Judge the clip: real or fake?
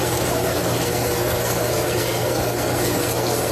fake